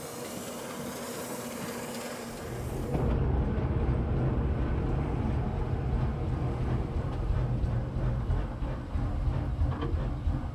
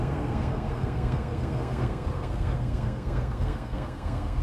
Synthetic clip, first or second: second